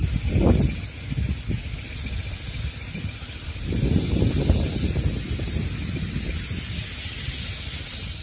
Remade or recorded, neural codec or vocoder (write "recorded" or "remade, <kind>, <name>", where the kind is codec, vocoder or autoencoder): recorded